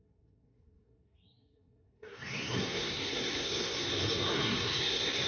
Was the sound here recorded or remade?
remade